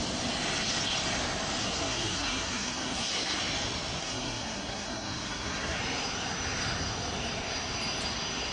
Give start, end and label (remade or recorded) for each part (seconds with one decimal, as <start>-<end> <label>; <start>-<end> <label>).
0.0-1.6 recorded; 1.6-3.4 remade; 3.4-4.0 recorded; 4.0-5.8 remade; 5.8-8.5 recorded